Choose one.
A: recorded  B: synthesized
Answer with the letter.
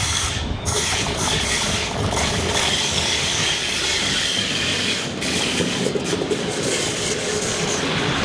B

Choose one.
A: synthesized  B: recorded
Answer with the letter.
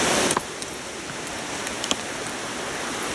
B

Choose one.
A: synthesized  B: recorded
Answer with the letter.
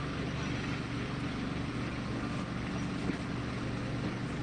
B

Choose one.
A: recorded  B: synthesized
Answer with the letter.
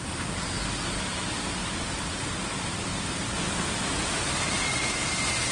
A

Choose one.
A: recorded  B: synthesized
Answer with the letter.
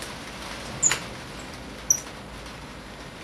A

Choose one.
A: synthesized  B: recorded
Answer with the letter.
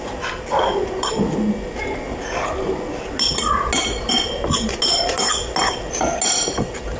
B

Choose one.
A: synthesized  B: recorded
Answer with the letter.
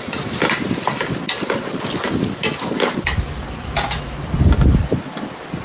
B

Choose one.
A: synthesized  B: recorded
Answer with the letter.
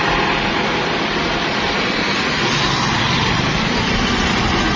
B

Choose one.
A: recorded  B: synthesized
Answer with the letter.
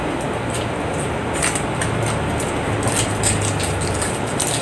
A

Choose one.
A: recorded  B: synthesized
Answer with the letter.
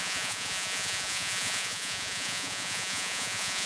B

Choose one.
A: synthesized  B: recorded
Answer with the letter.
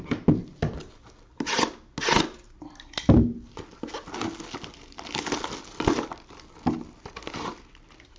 B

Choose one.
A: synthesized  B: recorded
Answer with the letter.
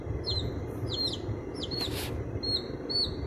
B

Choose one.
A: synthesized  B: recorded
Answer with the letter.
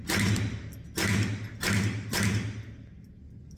B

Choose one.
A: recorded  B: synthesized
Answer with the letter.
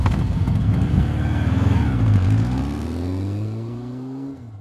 B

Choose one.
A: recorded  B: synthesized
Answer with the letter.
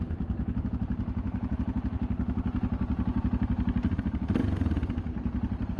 A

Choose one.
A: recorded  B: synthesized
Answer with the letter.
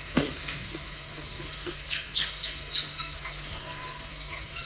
B